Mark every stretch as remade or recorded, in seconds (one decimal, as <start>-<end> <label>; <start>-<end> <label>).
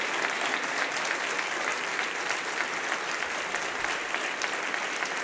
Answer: 0.0-5.2 recorded